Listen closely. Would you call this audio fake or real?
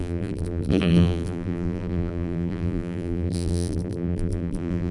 fake